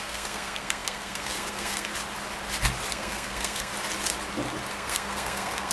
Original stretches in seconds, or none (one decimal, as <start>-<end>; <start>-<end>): 1.9-2.9; 3.7-4.7